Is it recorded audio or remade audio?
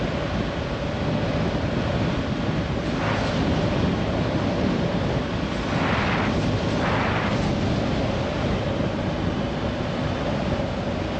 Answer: recorded